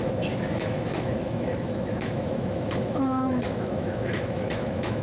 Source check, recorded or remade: remade